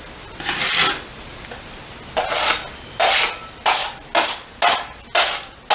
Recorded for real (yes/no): yes